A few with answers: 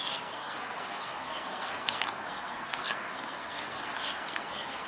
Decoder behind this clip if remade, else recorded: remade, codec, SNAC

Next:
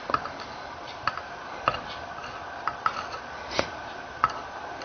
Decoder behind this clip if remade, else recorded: recorded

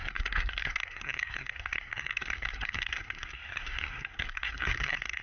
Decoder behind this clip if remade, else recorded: remade, codec, SNAC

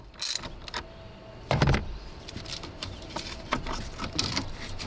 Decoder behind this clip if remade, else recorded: recorded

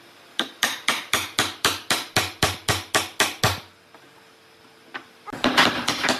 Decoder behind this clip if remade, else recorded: recorded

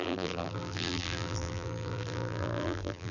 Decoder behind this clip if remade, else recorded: remade, vocoder, BigVGAN v2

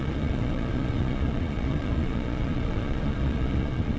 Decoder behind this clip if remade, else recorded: remade, vocoder, Vocos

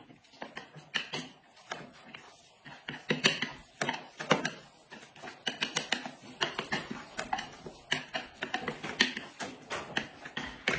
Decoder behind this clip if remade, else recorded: recorded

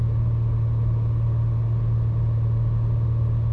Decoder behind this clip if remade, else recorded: recorded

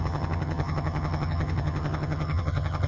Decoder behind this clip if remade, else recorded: remade, vocoder, HiFi-GAN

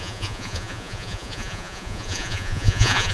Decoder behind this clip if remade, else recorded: remade, vocoder, Vocos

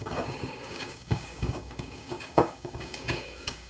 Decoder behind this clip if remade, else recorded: remade, codec, DAC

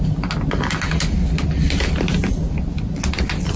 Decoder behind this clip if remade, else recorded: recorded